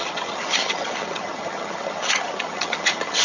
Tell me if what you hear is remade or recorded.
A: remade